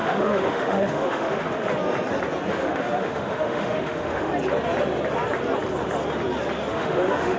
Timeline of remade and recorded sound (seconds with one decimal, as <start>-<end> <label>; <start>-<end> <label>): 0.0-1.6 remade; 1.6-2.5 recorded; 2.5-4.3 remade; 4.3-6.7 recorded; 6.7-7.4 remade